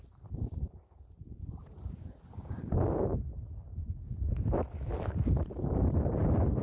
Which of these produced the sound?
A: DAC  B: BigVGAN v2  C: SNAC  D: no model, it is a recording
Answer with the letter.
B